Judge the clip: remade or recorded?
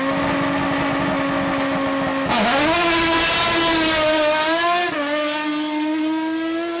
recorded